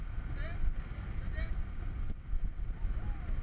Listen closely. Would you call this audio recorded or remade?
recorded